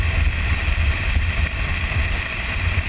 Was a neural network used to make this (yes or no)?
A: yes